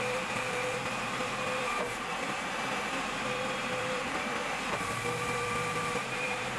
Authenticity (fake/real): fake